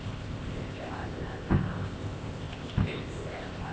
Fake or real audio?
fake